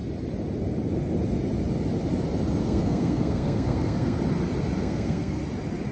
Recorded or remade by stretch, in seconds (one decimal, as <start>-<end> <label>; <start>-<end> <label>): 0.0-2.6 recorded; 2.6-4.2 remade; 4.2-4.8 recorded; 4.8-5.4 remade; 5.4-5.9 recorded